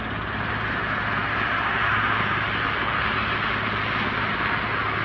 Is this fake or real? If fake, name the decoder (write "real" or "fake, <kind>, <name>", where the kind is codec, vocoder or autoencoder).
real